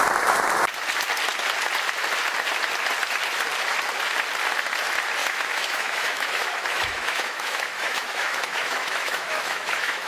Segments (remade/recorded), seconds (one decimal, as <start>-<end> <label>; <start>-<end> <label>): 0.0-5.2 recorded; 5.2-10.1 remade